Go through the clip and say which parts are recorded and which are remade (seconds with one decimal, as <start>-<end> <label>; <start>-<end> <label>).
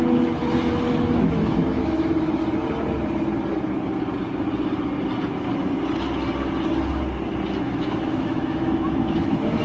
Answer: 0.0-0.4 remade; 0.4-1.0 recorded; 1.0-2.4 remade; 2.4-7.6 recorded; 7.6-9.6 remade